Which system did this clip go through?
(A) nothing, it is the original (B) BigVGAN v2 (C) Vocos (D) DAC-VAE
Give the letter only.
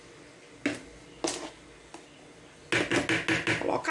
A